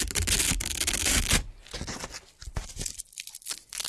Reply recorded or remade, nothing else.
recorded